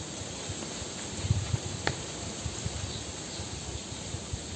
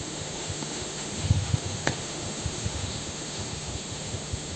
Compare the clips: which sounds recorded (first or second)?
first